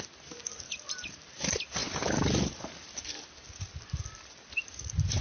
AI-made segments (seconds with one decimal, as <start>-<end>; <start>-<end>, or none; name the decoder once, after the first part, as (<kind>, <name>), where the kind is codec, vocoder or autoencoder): 1.8-4.5 (vocoder, BigVGAN v2)

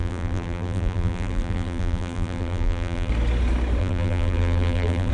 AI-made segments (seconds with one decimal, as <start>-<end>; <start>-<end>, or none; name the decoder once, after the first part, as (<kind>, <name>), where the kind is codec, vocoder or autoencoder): 0.0-3.1 (vocoder, BigVGAN v2); 3.8-5.1

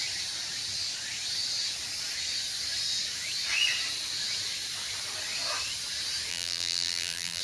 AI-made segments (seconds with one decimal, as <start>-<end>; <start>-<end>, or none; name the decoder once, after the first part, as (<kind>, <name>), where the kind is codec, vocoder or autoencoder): 6.3-7.4 (vocoder, BigVGAN v2)

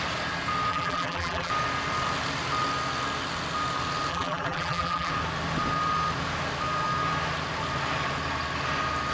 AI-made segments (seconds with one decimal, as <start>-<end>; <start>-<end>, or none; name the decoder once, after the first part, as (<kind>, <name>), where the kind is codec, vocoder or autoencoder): 0.7-1.5 (vocoder, BigVGAN v2); 4.1-5.1

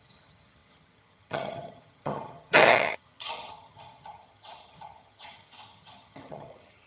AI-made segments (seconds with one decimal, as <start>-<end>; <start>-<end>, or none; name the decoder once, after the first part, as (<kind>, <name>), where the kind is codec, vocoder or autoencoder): 0.0-6.9 (vocoder, HiFi-GAN)

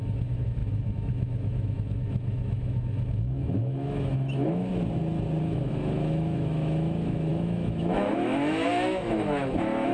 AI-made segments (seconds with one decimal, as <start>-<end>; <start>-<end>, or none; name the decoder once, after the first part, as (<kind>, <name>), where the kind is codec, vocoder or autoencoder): 0.0-4.7 (autoencoder, DAC-VAE); 5.4-9.9

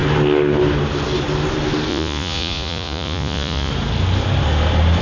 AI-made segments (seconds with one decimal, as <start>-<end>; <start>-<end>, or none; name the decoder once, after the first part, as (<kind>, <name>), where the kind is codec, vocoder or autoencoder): 1.9-3.7 (vocoder, Vocos)